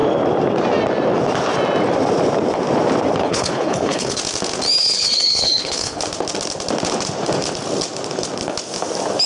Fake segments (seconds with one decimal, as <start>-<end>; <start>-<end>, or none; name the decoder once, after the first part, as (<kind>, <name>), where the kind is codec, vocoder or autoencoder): 3.2-4.2 (codec, HILCodec); 4.8-6.0